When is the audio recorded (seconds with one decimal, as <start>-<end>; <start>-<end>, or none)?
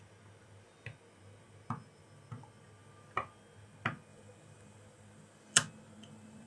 0.0-4.1